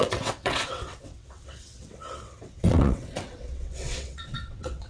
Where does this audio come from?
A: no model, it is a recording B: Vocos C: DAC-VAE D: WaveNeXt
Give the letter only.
D